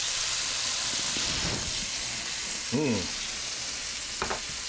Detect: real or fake real